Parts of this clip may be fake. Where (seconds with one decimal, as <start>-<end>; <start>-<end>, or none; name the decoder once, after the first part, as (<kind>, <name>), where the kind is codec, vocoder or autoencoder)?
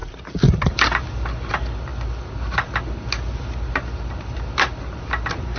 none